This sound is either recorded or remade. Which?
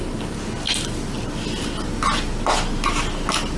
recorded